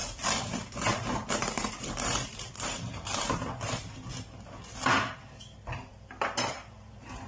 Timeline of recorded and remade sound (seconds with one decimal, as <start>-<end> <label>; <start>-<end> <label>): 0.0-3.9 remade; 3.9-5.9 recorded; 5.9-7.3 remade